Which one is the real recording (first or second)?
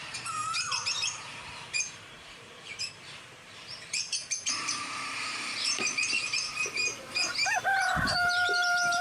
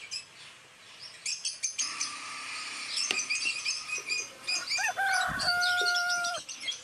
second